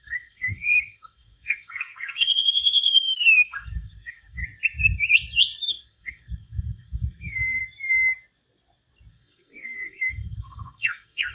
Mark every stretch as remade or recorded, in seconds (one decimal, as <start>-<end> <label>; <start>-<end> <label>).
0.0-4.4 remade; 4.4-5.7 recorded; 5.7-7.6 remade; 7.6-9.1 recorded; 9.1-11.3 remade